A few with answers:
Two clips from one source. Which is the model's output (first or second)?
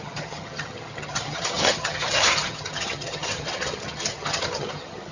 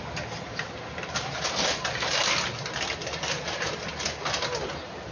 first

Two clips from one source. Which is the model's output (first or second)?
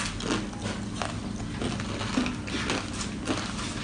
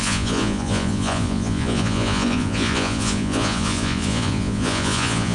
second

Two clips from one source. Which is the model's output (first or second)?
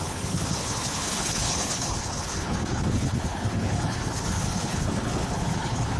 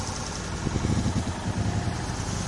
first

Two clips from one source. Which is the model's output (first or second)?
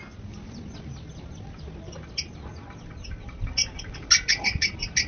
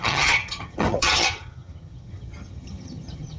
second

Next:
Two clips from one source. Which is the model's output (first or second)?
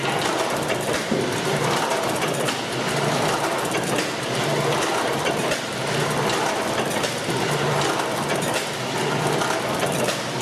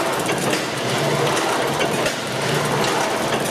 first